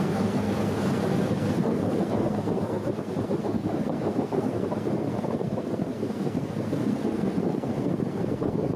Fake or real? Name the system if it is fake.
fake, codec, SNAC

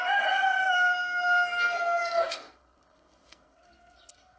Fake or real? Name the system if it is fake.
fake, codec, SNAC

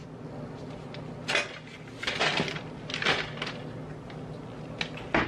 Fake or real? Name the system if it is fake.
real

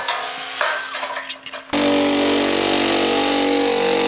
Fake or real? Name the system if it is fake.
real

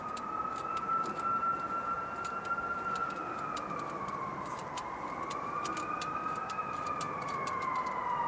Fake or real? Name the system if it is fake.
real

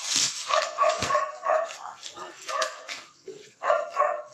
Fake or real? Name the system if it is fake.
fake, codec, SNAC